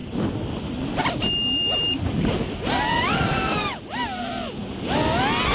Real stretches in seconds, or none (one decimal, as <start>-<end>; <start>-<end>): 0.0-5.5